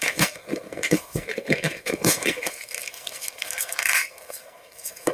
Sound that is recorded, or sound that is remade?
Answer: remade